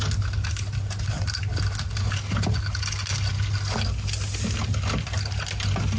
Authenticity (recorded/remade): recorded